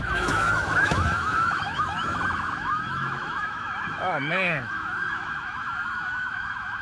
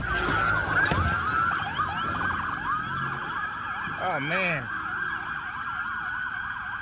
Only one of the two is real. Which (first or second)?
second